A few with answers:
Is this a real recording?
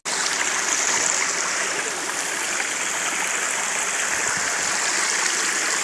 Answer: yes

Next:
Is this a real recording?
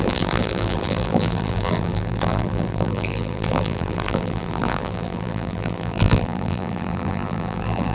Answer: no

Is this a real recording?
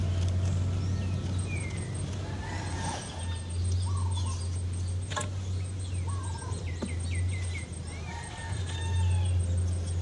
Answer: yes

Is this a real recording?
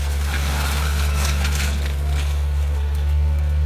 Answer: no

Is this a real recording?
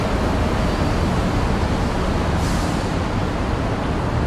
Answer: yes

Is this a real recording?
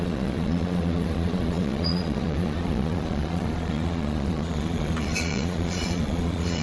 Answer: no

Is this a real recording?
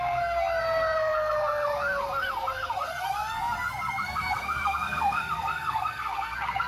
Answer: no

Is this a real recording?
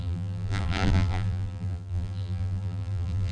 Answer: no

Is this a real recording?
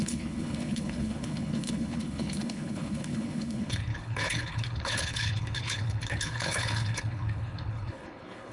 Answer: no